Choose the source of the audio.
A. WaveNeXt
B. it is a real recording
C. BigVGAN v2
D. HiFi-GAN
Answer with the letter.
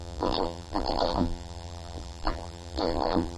C